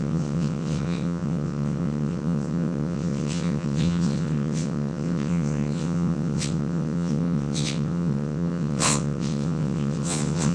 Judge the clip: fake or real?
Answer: fake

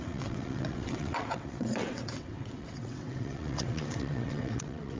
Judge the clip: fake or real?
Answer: fake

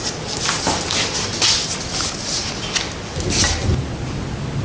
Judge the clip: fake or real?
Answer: real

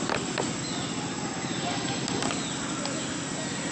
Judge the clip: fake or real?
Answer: real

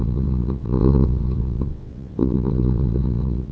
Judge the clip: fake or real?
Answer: fake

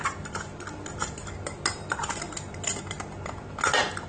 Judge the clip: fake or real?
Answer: real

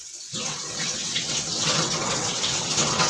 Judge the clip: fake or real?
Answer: fake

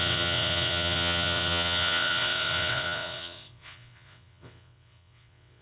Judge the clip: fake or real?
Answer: fake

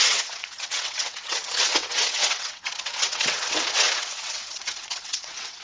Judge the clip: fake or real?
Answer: fake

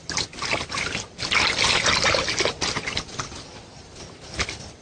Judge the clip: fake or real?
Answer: real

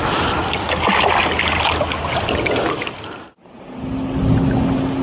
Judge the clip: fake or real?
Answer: real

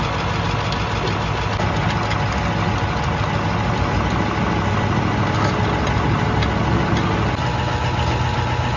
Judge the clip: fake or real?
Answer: real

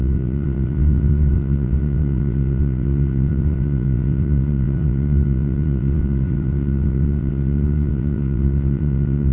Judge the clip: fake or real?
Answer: fake